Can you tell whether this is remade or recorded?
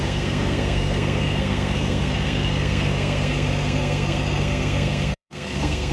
remade